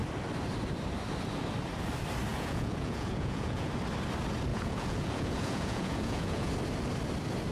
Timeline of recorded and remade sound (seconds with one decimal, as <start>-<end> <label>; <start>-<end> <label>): 0.0-2.3 recorded; 2.3-3.7 remade; 3.7-4.5 recorded; 4.5-6.5 remade; 6.5-7.5 recorded

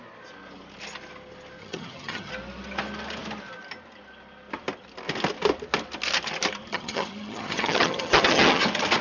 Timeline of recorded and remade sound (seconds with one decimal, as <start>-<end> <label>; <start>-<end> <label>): 0.0-1.6 recorded; 1.6-2.3 remade; 2.3-6.7 recorded; 6.7-8.6 remade; 8.6-9.0 recorded

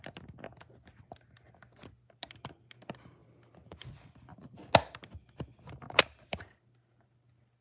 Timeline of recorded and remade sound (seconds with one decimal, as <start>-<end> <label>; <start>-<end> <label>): 0.0-3.2 recorded; 3.2-3.9 remade; 3.9-7.6 recorded

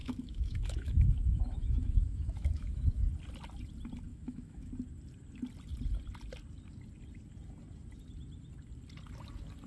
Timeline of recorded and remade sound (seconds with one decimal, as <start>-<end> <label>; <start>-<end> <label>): 0.0-3.1 remade; 3.1-4.1 recorded; 4.1-4.7 remade; 4.7-9.7 recorded

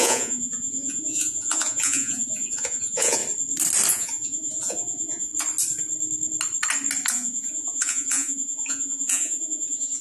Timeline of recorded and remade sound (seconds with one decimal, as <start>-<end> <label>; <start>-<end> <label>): 0.0-3.2 remade; 3.2-3.9 recorded; 3.9-5.3 remade; 5.3-7.1 recorded; 7.1-10.0 remade

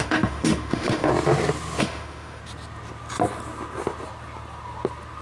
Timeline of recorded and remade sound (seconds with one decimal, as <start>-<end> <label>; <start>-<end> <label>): 0.0-1.1 remade; 1.1-1.8 recorded; 1.8-2.4 remade; 2.4-5.2 recorded

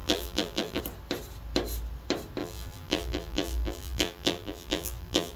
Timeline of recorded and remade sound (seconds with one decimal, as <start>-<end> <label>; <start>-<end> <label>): 0.0-0.8 remade; 0.8-2.4 recorded; 2.4-5.4 remade

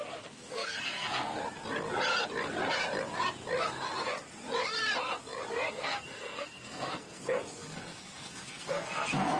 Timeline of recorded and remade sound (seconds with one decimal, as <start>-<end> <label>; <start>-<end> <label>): 0.0-1.4 remade; 1.4-5.7 recorded; 5.7-9.4 remade